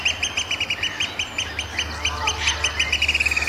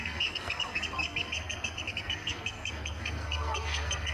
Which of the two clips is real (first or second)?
first